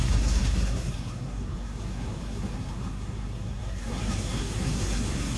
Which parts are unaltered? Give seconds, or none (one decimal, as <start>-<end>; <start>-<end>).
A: none